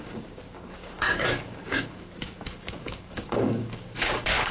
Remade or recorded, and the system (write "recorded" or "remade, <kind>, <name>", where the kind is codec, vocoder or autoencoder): remade, codec, DAC